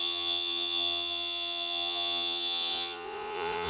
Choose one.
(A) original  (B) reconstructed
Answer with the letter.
B